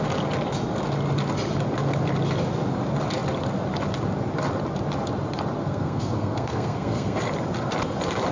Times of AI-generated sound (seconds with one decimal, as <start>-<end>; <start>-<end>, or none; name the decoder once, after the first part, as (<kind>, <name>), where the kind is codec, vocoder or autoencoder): 5.6-7.2 (codec, SNAC)